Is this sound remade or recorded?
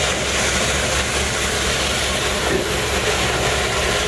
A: recorded